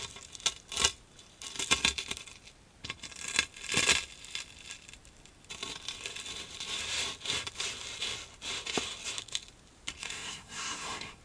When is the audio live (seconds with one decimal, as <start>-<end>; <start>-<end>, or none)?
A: 0.0-10.0